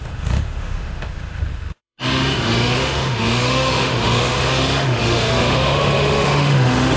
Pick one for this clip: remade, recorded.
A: remade